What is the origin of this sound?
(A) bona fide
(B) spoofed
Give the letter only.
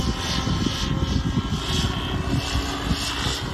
A